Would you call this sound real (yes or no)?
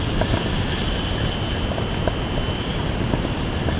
yes